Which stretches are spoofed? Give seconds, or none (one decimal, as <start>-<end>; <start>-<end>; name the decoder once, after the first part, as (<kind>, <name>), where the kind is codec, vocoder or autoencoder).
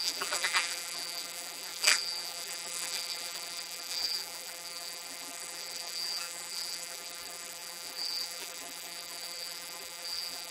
0.0-10.5 (vocoder, BigVGAN v2)